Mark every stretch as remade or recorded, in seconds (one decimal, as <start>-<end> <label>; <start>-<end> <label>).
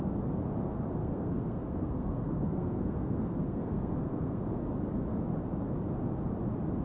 0.0-1.0 recorded; 1.0-4.4 remade; 4.4-6.8 recorded